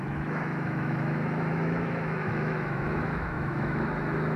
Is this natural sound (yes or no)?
no